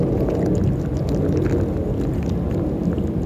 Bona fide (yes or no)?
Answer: yes